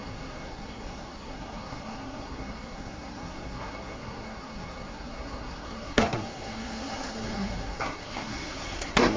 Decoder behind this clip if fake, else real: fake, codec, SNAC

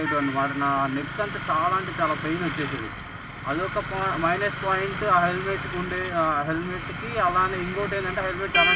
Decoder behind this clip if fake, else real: real